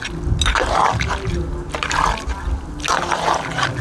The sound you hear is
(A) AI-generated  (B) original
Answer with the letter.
B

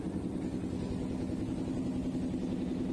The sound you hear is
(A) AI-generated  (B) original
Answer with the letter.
B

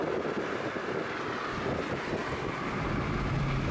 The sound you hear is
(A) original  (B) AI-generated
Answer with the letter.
A